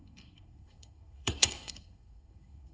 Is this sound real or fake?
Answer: fake